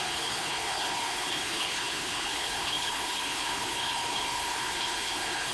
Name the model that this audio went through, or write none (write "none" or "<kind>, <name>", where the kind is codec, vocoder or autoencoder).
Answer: codec, HILCodec